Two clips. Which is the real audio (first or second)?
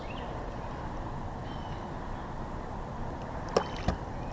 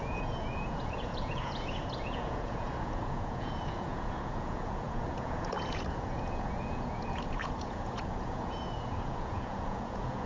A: first